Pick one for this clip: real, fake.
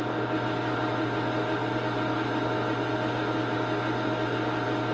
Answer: real